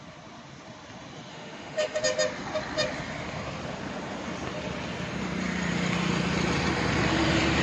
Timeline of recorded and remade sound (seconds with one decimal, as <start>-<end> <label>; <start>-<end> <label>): 0.0-1.3 recorded; 1.3-2.0 remade; 2.0-7.6 recorded